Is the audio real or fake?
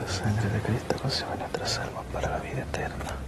real